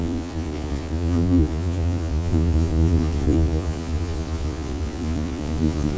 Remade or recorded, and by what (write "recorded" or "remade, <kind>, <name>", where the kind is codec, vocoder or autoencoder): remade, vocoder, Vocos